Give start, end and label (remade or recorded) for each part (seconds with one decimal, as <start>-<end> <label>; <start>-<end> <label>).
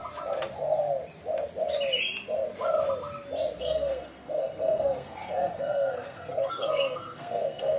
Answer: 0.0-3.6 recorded; 3.6-7.8 remade